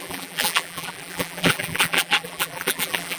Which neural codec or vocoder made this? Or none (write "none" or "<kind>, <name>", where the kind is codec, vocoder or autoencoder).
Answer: vocoder, BigVGAN v2